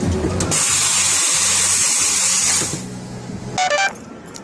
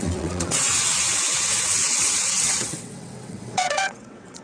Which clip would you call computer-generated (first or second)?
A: second